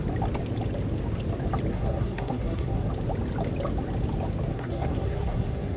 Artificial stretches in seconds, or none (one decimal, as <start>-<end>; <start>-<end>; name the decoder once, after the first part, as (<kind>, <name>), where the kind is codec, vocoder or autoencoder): 1.7-2.9 (codec, SNAC); 4.5-5.8